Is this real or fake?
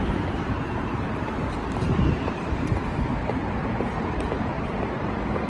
fake